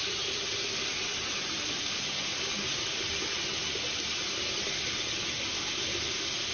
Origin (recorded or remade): recorded